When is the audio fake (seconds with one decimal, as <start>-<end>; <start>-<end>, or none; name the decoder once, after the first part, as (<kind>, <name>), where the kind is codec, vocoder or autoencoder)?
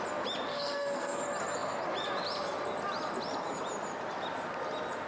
0.5-1.2 (codec, SNAC)